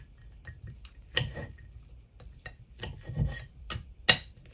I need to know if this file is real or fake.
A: real